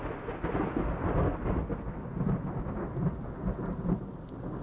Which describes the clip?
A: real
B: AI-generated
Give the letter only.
A